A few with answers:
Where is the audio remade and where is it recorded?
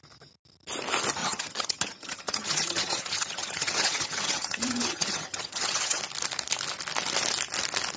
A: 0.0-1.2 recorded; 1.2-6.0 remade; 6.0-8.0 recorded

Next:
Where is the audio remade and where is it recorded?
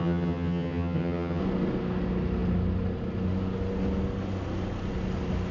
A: 0.0-1.4 remade; 1.4-5.5 recorded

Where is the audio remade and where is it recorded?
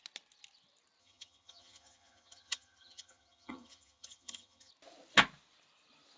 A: 0.0-1.0 recorded; 1.0-4.7 remade; 4.7-6.2 recorded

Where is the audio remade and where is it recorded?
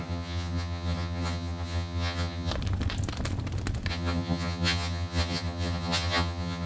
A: 0.0-2.5 remade; 2.5-3.9 recorded; 3.9-6.7 remade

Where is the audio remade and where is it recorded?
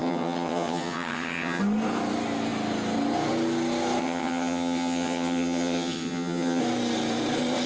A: 0.0-1.6 remade; 1.6-4.0 recorded; 4.0-6.6 remade; 6.6-7.7 recorded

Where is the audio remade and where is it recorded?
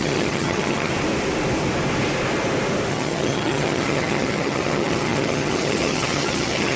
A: 0.0-0.9 remade; 0.9-2.9 recorded; 2.9-6.8 remade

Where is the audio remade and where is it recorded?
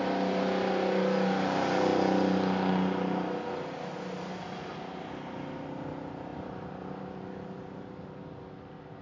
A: 0.0-9.0 recorded